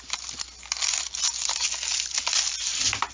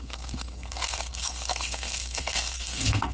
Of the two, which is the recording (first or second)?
first